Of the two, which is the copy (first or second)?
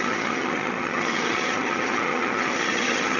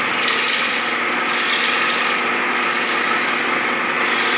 first